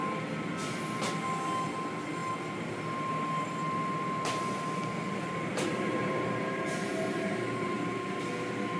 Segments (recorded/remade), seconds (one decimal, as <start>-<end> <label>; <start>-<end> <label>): 0.0-5.5 recorded; 5.5-8.2 remade; 8.2-8.8 recorded